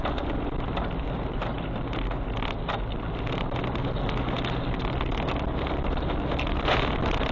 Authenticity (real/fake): real